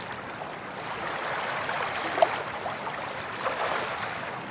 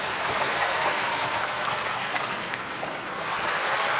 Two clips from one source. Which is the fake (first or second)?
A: second